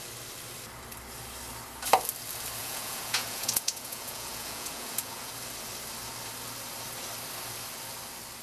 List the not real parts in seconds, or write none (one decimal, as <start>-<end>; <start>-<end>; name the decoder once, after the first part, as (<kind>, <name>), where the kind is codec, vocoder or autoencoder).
2.6-5.3 (vocoder, Vocos)